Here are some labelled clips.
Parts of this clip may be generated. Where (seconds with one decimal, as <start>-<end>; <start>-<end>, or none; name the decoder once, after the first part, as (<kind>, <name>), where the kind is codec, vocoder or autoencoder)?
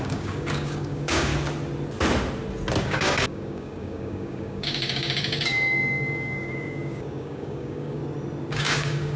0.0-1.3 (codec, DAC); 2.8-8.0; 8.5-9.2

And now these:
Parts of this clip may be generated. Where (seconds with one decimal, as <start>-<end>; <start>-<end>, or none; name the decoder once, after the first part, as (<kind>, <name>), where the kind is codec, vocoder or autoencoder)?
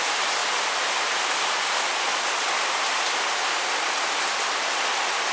none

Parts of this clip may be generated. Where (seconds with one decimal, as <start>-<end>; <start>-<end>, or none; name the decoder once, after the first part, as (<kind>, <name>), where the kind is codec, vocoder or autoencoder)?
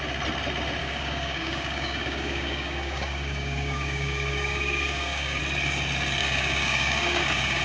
0.8-5.4 (codec, DAC); 6.2-7.6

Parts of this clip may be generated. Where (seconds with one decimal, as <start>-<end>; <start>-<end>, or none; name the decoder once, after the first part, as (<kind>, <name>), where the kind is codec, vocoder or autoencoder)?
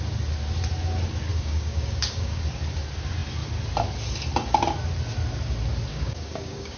1.3-2.4 (codec, DAC); 5.9-6.8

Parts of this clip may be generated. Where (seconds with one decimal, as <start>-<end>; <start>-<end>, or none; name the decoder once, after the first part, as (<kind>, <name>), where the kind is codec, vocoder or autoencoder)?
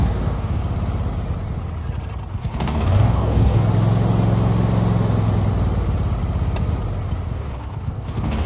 0.0-0.6 (codec, DAC); 2.3-3.6; 7.3-8.5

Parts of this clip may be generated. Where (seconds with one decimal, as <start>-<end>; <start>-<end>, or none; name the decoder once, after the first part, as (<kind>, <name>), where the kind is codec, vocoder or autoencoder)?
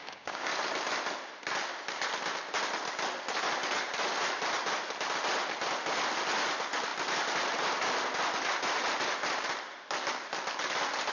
0.0-0.5 (codec, DAC)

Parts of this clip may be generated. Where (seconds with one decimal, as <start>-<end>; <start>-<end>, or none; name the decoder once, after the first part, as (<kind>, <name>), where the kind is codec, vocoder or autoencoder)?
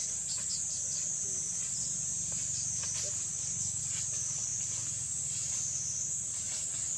3.3-3.8 (codec, DAC)